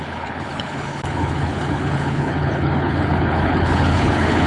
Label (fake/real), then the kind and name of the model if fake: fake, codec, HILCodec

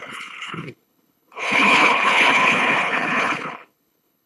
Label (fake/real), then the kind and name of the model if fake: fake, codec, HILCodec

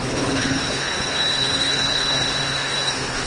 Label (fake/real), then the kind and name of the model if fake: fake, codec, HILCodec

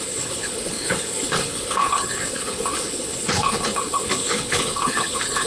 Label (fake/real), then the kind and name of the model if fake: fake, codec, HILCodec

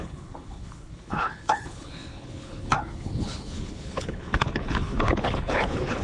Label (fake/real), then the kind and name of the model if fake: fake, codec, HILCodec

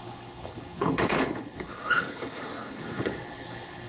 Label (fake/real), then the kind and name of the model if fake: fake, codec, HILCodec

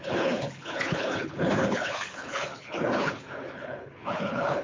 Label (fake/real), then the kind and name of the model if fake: fake, codec, HILCodec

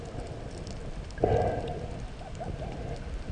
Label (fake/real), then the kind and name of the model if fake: real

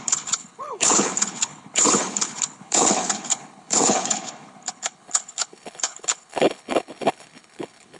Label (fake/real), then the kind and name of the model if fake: fake, codec, HILCodec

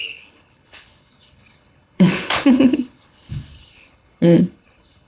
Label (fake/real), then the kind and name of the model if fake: fake, codec, HILCodec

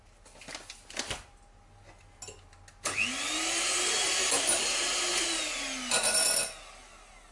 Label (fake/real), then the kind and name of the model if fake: real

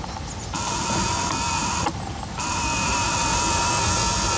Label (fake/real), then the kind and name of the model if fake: real